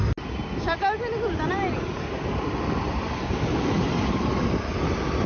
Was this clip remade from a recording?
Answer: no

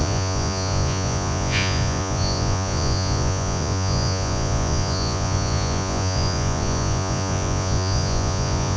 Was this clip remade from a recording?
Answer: yes